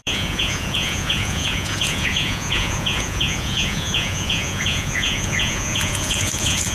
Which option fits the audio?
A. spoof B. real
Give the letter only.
A